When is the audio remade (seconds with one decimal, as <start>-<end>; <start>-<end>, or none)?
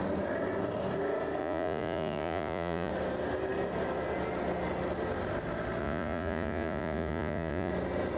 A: 1.4-2.9; 5.8-7.7